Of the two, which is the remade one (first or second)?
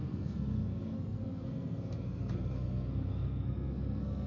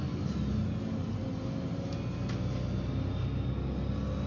first